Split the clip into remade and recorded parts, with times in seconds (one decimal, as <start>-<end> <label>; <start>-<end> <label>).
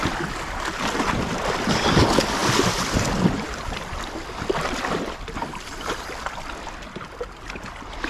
0.0-2.4 recorded; 2.4-6.5 remade; 6.5-8.1 recorded